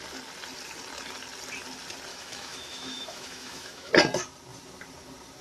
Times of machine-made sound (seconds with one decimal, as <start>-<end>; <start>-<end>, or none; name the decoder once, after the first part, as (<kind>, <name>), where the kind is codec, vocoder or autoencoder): 2.1-3.9 (autoencoder, DAC-VAE)